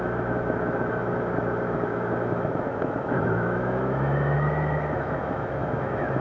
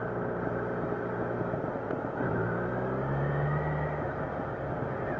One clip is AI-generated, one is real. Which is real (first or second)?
second